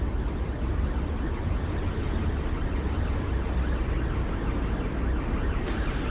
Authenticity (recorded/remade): recorded